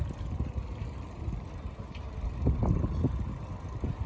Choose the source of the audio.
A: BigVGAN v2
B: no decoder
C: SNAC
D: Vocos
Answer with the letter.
B